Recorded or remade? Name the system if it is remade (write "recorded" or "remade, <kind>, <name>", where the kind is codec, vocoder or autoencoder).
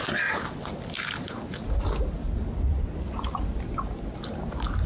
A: recorded